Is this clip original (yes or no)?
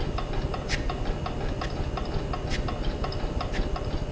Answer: yes